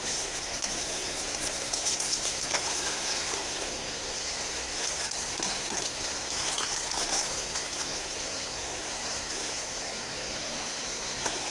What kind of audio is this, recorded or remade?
remade